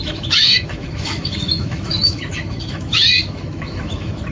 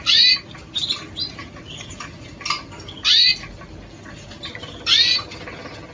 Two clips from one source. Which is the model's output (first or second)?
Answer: first